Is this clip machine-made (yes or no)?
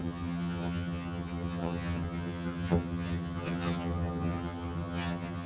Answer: yes